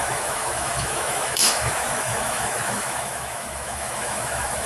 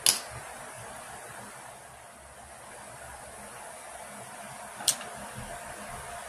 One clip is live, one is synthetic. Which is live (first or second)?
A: second